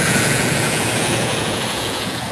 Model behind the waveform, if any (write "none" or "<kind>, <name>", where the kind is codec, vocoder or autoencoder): vocoder, Vocos